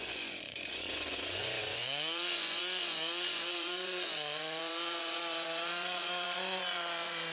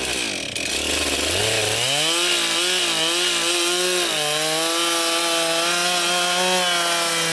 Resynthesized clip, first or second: first